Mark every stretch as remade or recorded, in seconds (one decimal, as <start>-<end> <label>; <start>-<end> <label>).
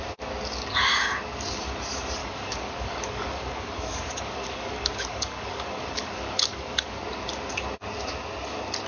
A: 0.0-2.2 recorded; 2.2-7.0 remade; 7.0-8.9 recorded